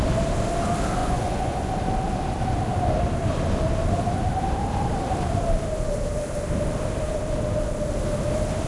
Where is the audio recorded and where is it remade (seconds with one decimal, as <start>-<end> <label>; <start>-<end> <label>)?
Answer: 0.0-1.0 recorded; 1.0-1.7 remade; 1.7-8.7 recorded

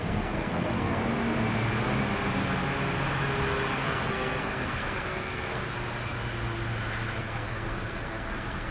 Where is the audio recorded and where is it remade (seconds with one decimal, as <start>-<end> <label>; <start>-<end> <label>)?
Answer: 0.0-1.0 remade; 1.0-3.7 recorded; 3.7-5.6 remade; 5.6-7.2 recorded; 7.2-8.7 remade

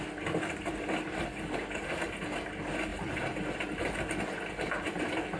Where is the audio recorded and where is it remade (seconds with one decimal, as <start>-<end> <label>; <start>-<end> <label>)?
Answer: 0.0-5.4 recorded